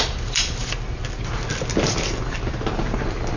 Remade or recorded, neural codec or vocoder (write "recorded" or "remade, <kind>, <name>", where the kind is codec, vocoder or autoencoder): recorded